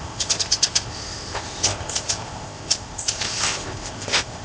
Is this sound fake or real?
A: fake